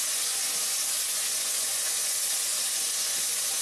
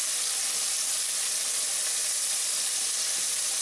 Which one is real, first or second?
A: second